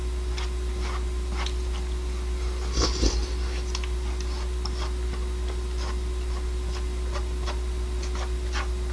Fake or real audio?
real